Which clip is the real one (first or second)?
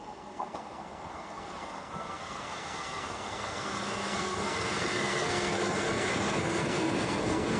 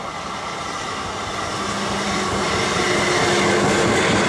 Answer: second